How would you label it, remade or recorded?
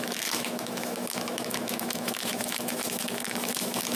remade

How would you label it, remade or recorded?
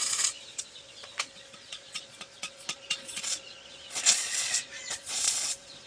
remade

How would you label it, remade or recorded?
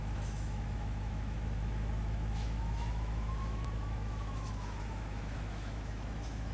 remade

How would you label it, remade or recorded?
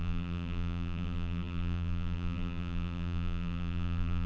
remade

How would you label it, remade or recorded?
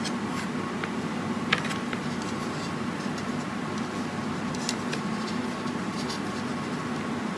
recorded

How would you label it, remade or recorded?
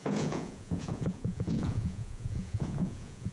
remade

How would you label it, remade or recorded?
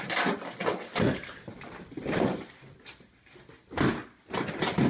recorded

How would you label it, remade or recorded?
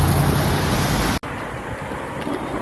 recorded